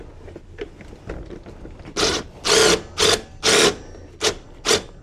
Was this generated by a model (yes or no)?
no